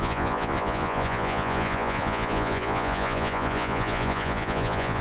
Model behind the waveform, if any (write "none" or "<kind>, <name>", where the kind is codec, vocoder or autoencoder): vocoder, Vocos